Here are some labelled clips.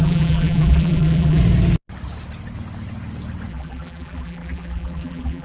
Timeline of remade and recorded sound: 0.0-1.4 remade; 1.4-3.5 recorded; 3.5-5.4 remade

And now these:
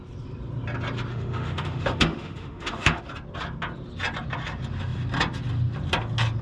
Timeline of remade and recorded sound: 0.0-1.1 recorded; 1.1-3.0 remade; 3.0-6.4 recorded

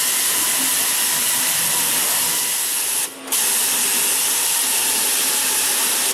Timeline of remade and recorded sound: 0.0-4.8 recorded; 4.8-6.1 remade

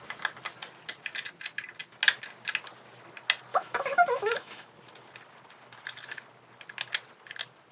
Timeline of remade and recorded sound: 0.0-3.5 recorded; 3.5-4.7 remade; 4.7-7.7 recorded

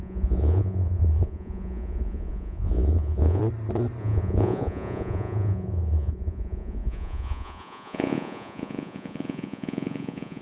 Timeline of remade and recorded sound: 0.0-3.4 remade; 3.4-4.0 recorded; 4.0-10.4 remade

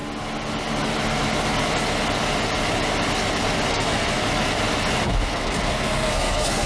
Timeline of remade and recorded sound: 0.0-3.7 recorded; 3.7-4.2 remade; 4.2-5.1 recorded; 5.1-6.7 remade

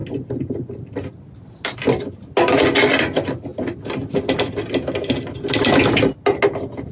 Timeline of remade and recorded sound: 0.0-6.9 recorded

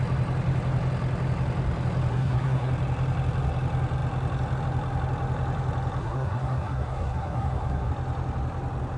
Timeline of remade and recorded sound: 0.0-2.1 recorded; 2.1-2.7 remade; 2.7-6.0 recorded; 6.0-7.9 remade; 7.9-9.0 recorded